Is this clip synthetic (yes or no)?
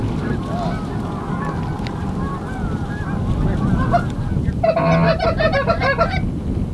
no